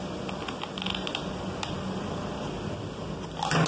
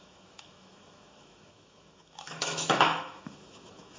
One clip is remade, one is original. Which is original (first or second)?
first